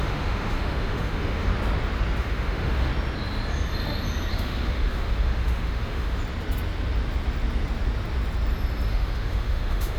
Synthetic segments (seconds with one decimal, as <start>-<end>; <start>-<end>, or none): 0.0-1.5; 2.2-2.9; 4.3-6.2; 8.9-10.0